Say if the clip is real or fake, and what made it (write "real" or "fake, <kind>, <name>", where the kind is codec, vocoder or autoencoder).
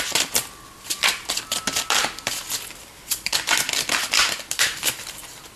real